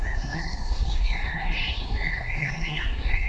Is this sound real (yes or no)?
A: no